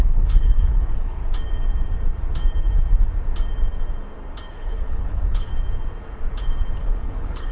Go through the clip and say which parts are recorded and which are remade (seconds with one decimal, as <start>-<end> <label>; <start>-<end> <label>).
0.0-1.2 remade; 1.2-4.5 recorded; 4.5-5.5 remade; 5.5-6.8 recorded; 6.8-7.5 remade